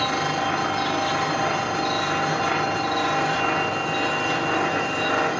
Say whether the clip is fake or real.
real